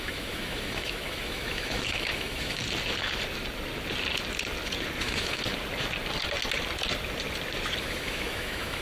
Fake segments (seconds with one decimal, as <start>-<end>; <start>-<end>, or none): 0.0-2.6; 5.0-5.4; 7.8-8.8